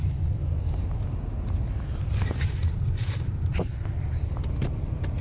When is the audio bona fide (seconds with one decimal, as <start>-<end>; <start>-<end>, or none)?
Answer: 0.0-5.2